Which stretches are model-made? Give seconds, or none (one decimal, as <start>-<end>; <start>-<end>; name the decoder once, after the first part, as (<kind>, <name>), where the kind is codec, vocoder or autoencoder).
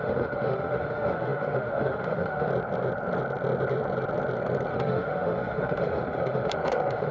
0.0-2.5 (autoencoder, DAC-VAE); 4.7-7.1